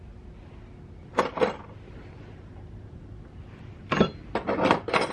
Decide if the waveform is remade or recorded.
recorded